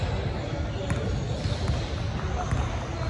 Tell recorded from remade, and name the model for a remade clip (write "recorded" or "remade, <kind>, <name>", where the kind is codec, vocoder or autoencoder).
recorded